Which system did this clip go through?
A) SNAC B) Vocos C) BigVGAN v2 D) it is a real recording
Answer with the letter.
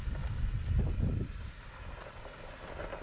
D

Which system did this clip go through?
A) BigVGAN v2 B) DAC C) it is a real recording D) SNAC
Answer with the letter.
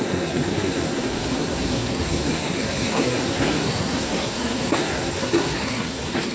D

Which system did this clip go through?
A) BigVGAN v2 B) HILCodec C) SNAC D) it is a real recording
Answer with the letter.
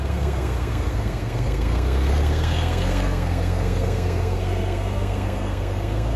C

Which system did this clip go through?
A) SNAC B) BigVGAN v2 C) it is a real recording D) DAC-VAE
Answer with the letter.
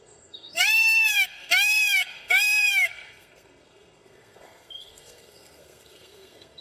A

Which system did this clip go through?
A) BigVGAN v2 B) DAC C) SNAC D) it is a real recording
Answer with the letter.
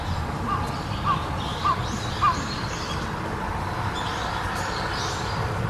D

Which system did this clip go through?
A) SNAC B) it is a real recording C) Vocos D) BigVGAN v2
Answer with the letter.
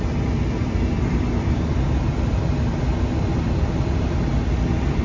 B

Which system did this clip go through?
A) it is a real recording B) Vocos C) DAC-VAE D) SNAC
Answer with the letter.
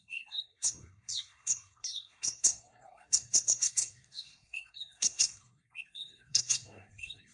D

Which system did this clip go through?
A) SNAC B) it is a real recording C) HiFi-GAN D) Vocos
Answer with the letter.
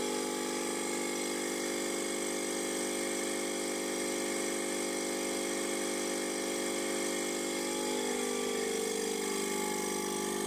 B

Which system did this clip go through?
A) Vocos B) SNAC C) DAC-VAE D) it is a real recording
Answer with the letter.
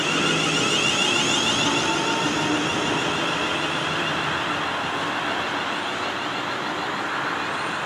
D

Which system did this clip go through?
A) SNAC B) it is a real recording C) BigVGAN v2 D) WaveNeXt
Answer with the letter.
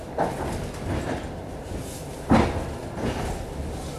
B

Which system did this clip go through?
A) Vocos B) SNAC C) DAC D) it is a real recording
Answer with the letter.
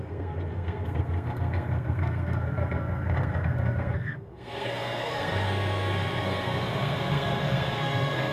B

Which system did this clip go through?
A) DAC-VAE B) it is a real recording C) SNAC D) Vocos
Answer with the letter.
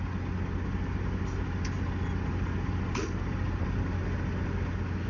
B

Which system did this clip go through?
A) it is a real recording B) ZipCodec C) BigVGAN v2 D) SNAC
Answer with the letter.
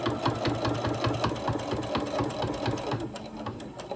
A